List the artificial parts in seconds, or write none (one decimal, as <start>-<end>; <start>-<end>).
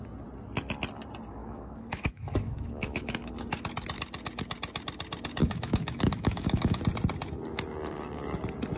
1.4-3.3; 5.4-6.8